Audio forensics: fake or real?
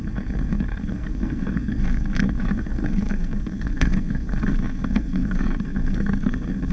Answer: fake